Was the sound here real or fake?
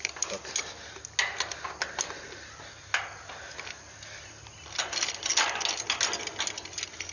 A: real